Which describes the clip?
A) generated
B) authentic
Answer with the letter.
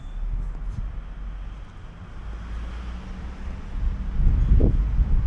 B